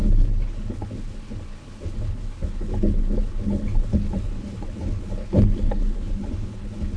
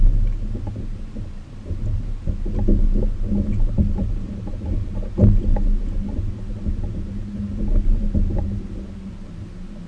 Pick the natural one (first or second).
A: second